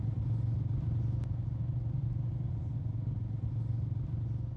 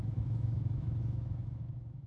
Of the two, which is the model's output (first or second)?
second